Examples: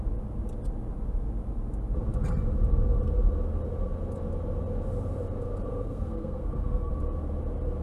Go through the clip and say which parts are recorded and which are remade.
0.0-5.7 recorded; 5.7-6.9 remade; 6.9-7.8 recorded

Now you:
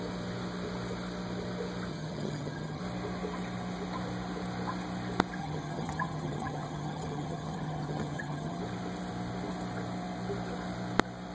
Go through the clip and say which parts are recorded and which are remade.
0.0-1.9 recorded; 1.9-2.8 remade; 2.8-5.4 recorded; 5.4-8.6 remade; 8.6-11.3 recorded

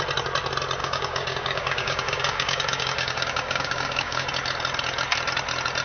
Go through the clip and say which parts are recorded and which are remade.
0.0-0.8 recorded; 0.8-4.3 remade; 4.3-5.8 recorded

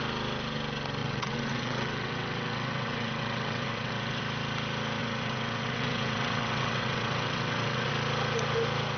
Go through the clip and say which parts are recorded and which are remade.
0.0-1.0 recorded; 1.0-4.2 remade; 4.2-5.0 recorded; 5.0-7.9 remade; 7.9-9.0 recorded

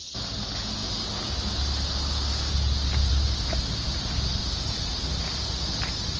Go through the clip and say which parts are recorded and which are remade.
0.0-4.4 recorded; 4.4-5.0 remade; 5.0-6.2 recorded

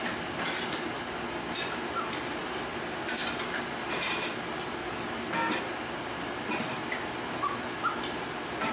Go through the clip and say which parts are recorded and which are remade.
0.0-8.7 recorded